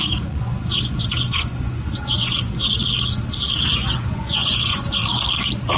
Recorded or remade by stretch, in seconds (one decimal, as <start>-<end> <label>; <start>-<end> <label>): 0.0-2.8 remade; 2.8-3.7 recorded; 3.7-5.0 remade; 5.0-5.8 recorded